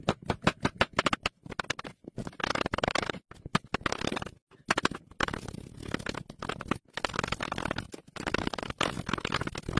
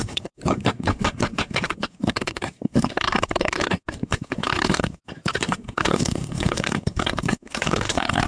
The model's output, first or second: second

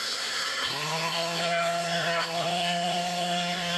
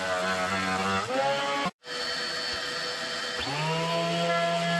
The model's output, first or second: first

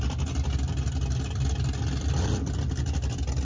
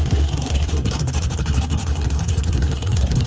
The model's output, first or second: second